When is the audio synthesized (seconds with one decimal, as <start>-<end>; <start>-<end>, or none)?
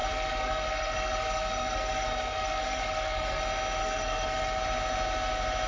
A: 0.0-3.4; 3.8-4.6